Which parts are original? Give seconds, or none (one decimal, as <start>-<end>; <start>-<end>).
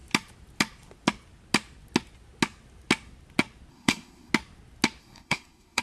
0.0-3.7; 4.3-5.0